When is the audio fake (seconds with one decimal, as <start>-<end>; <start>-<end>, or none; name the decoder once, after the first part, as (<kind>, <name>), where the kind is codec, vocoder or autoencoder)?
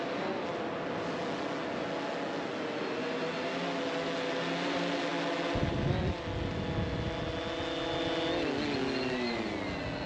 none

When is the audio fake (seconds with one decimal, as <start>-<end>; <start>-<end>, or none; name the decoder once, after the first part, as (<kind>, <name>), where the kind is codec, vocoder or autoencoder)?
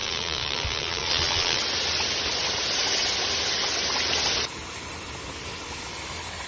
0.0-1.6 (vocoder, Vocos)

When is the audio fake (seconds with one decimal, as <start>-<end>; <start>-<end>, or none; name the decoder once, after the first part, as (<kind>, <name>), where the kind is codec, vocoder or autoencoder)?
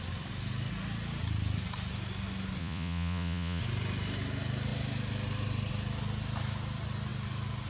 2.6-3.6 (vocoder, Vocos)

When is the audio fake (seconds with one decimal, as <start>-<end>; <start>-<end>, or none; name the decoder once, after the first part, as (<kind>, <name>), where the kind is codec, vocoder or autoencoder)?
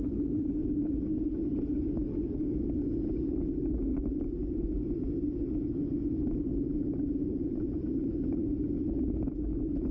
3.9-4.8 (vocoder, BigVGAN v2); 6.5-8.1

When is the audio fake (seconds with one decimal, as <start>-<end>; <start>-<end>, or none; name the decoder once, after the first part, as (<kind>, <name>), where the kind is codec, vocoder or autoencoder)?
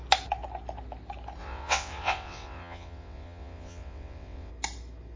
1.4-4.5 (vocoder, WaveNeXt)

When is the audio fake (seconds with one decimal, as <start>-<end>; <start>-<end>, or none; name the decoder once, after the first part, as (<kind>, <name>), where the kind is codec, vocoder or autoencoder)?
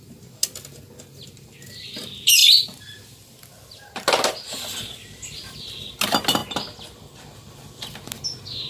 none